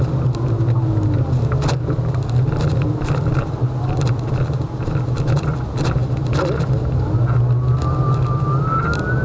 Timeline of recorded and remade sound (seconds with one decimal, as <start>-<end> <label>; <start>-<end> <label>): 0.0-6.0 recorded; 6.0-6.6 remade; 6.6-9.2 recorded